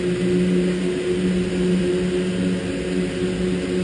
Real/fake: real